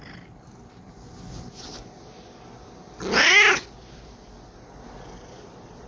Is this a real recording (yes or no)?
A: yes